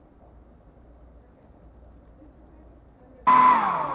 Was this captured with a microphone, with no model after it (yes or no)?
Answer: yes